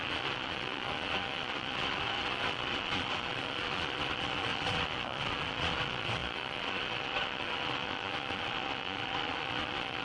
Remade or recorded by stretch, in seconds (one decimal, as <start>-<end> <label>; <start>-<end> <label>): 0.0-10.0 remade